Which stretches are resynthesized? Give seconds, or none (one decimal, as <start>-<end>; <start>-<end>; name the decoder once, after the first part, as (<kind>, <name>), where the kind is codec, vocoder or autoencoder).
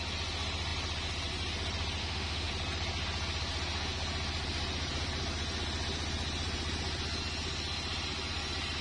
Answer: 2.0-2.5 (autoencoder, DAC-VAE)